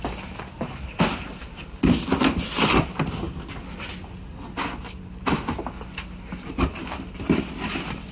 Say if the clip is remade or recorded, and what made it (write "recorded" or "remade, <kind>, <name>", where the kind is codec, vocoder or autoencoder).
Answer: recorded